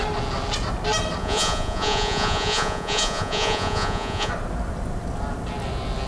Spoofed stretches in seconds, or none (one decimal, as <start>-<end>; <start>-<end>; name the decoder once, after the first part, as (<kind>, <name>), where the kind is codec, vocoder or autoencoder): 1.2-4.3 (vocoder, Vocos)